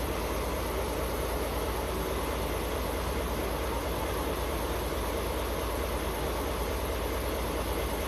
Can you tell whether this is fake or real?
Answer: real